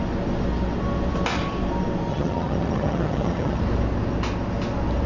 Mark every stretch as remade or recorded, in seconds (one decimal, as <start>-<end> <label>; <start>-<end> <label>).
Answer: 0.0-2.1 recorded; 2.1-3.6 remade; 3.6-5.1 recorded